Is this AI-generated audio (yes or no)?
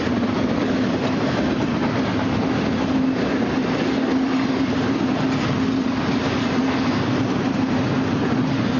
no